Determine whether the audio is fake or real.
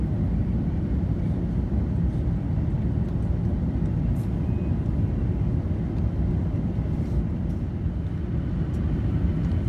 real